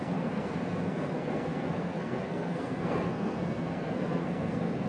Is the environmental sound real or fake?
fake